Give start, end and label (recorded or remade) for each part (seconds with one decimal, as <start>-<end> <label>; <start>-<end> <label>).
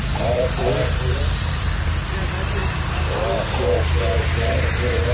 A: 0.0-2.6 remade; 2.6-3.8 recorded; 3.8-5.1 remade